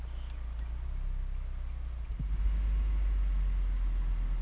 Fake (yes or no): no